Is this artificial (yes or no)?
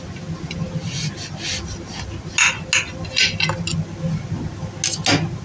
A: no